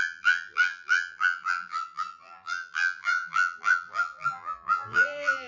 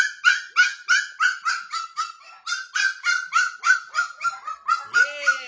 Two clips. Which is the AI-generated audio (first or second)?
first